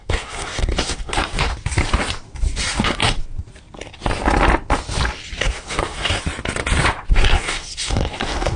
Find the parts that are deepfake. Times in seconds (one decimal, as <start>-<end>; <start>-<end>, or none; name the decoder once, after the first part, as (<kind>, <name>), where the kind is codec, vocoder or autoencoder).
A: 0.0-1.5 (codec, SNAC); 2.8-3.2; 5.4-6.2; 7.1-8.6